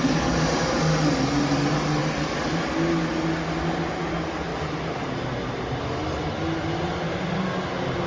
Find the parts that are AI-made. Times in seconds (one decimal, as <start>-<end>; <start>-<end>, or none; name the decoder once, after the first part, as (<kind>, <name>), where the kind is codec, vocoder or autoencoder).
2.0-2.7 (vocoder, BigVGAN v2); 4.5-5.6